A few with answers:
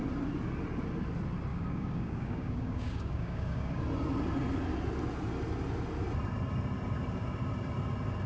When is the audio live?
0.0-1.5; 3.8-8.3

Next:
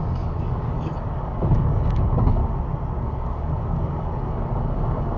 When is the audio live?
2.4-3.0

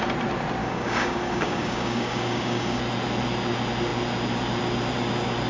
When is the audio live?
0.0-0.6; 2.8-5.5